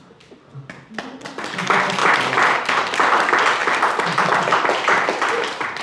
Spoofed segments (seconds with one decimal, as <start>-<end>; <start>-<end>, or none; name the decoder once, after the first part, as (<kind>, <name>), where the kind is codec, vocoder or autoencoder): 2.0-2.7 (vocoder, BigVGAN v2); 3.6-5.8